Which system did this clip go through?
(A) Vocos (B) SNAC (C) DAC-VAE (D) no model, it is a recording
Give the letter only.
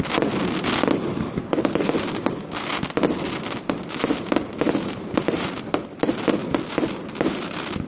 D